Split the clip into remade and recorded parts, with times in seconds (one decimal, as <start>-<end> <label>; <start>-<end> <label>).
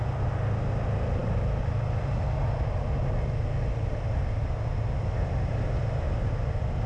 0.0-6.9 recorded